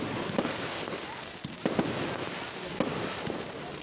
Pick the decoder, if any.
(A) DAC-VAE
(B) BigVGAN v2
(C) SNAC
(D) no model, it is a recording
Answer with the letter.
B